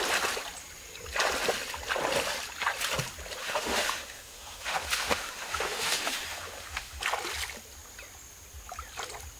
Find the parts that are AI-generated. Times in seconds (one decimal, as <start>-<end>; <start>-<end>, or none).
3.4-7.0